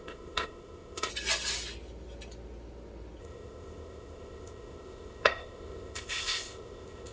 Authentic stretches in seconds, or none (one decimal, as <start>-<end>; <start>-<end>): 1.1-3.2